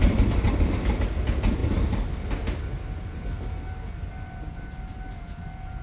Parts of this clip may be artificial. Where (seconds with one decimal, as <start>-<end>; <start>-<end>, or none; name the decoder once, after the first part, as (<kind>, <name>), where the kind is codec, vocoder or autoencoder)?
none